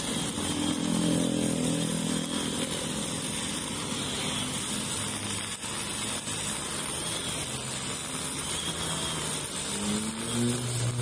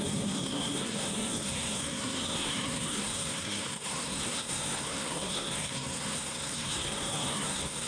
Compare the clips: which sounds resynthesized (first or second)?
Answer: second